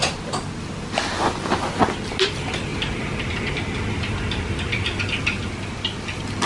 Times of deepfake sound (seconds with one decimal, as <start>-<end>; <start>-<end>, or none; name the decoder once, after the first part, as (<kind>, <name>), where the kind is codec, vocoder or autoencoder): none